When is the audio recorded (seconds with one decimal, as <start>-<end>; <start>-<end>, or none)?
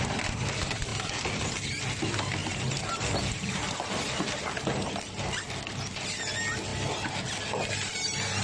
0.0-0.9; 1.4-2.4; 4.9-8.4